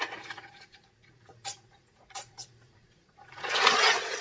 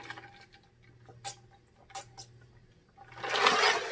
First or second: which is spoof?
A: first